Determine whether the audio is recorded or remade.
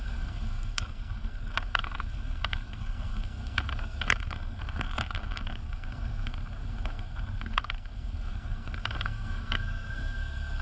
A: remade